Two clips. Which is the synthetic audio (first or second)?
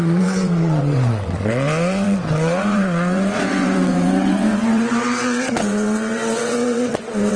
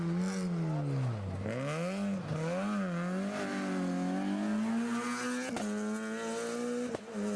first